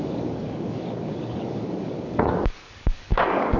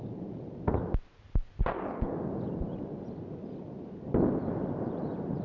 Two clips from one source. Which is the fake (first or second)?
first